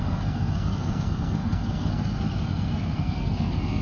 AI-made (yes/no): yes